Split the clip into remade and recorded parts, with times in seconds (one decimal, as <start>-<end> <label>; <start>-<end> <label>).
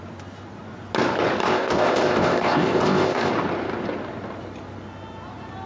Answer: 0.0-1.4 recorded; 1.4-3.3 remade; 3.3-5.7 recorded